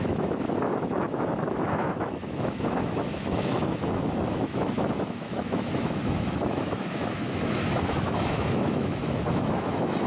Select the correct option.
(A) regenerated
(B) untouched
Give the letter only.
A